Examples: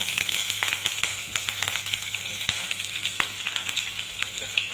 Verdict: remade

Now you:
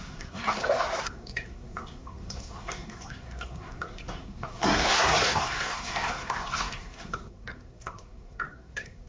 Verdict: remade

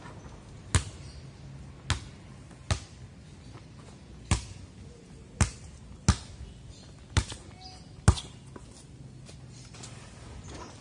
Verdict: recorded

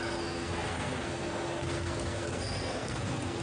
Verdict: remade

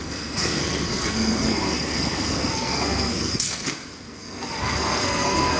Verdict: remade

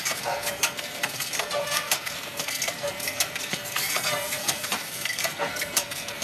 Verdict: remade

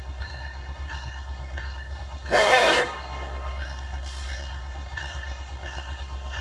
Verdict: remade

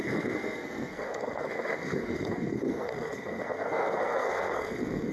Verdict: remade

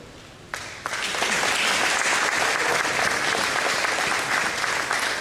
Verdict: recorded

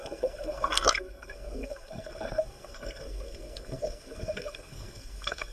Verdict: remade